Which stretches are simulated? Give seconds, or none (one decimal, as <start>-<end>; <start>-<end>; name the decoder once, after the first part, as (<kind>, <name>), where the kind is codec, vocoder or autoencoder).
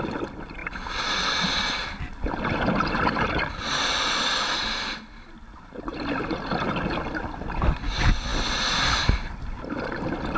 none